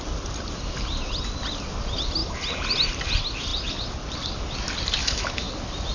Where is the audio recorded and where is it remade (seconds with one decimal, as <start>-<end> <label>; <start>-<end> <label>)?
0.0-5.0 recorded; 5.0-5.5 remade; 5.5-5.9 recorded